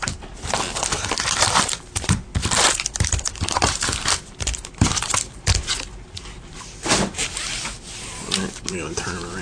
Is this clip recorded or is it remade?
remade